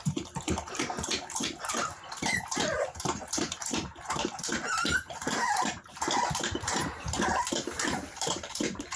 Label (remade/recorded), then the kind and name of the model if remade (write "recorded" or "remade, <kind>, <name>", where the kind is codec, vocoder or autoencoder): remade, vocoder, BigVGAN v2